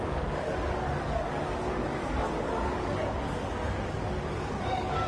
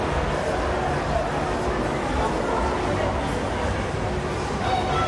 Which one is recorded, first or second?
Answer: second